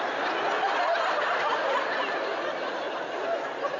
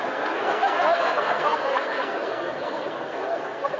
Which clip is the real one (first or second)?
first